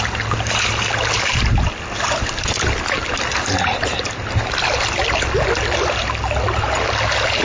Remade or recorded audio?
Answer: recorded